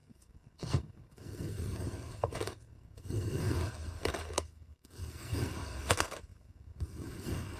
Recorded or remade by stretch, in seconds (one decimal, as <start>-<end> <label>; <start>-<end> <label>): 0.0-7.6 remade

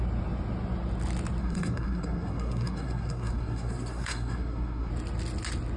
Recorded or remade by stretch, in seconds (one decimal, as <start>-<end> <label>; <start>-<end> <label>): 0.0-1.4 recorded; 1.4-4.9 remade; 4.9-5.8 recorded

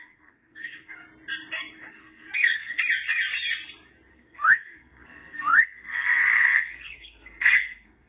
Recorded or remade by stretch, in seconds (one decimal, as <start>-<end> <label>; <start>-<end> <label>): 0.0-1.0 remade; 1.0-1.9 recorded; 1.9-2.8 remade; 2.8-4.1 recorded; 4.1-8.1 remade

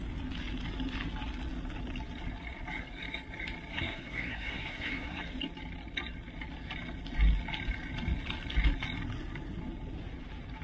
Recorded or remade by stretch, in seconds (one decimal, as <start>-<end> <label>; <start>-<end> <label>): 0.0-3.7 recorded; 3.7-5.2 remade; 5.2-10.6 recorded